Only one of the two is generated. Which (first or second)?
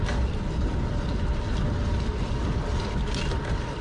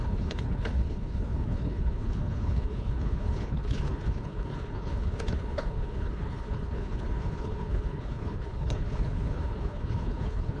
second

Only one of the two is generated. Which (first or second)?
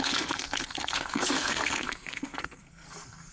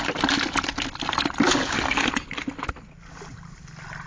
first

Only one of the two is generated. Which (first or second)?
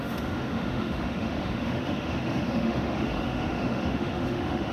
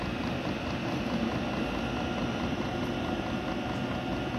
first